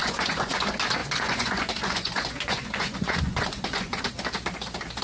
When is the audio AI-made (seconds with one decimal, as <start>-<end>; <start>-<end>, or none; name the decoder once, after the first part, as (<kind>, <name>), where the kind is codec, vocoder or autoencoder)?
0.0-0.6 (vocoder, Vocos); 1.0-4.0